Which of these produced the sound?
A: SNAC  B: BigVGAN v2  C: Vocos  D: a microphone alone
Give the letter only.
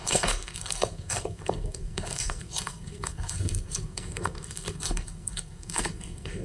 A